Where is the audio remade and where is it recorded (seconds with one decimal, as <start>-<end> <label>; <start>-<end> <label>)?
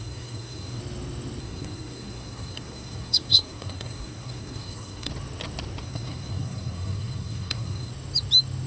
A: 0.0-0.8 remade; 0.8-1.4 recorded; 1.4-5.1 remade; 5.1-5.8 recorded; 5.8-7.9 remade; 7.9-8.7 recorded